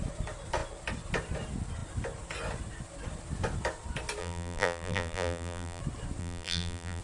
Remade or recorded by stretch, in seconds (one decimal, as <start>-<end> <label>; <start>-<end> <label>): 0.0-4.2 recorded; 4.2-5.8 remade; 5.8-6.2 recorded; 6.2-7.0 remade